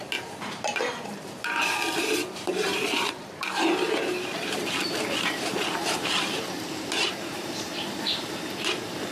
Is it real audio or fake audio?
fake